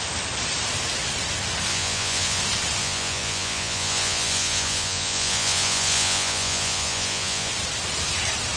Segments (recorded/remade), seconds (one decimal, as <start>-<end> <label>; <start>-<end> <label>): 0.0-1.7 recorded; 1.7-2.4 remade; 2.4-2.8 recorded; 2.8-7.5 remade; 7.5-8.6 recorded